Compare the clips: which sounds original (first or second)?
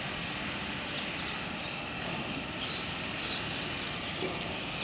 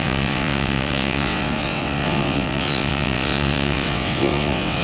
first